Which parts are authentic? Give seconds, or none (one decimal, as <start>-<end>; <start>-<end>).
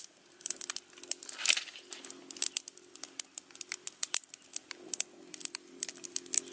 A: 0.0-6.5